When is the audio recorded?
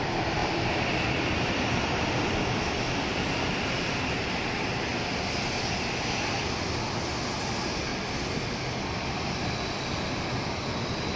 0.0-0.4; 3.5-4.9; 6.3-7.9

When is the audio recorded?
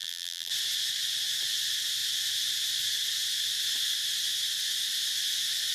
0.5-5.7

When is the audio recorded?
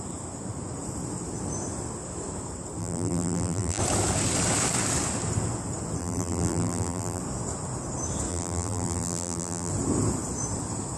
0.0-2.8; 3.8-6.0; 7.2-8.3; 9.7-11.0